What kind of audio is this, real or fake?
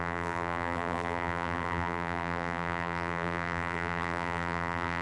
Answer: fake